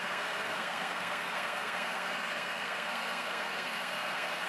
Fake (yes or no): yes